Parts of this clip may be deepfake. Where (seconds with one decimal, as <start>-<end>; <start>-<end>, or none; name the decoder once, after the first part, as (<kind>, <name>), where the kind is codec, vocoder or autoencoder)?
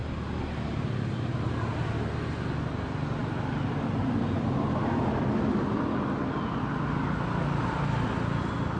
none